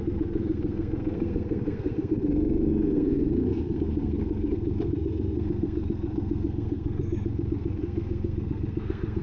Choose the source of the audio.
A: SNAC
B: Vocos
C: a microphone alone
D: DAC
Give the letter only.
A